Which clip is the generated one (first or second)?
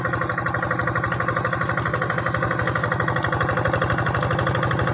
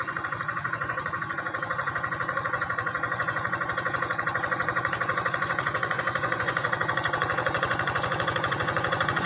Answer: second